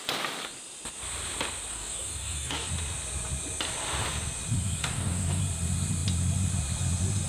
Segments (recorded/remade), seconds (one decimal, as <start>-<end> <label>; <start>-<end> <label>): 0.0-1.7 recorded; 1.7-2.7 remade; 2.7-4.8 recorded; 4.8-5.4 remade; 5.4-7.3 recorded